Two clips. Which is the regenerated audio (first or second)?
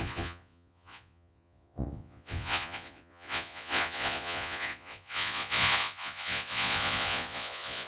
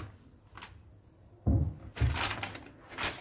first